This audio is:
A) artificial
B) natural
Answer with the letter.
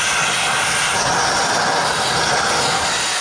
B